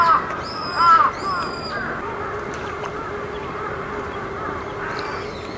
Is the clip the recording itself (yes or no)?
yes